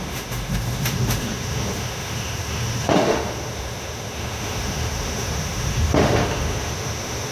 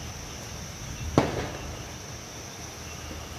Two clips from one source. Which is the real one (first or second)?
second